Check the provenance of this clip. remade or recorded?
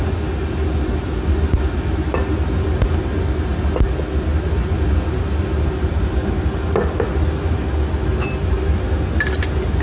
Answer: recorded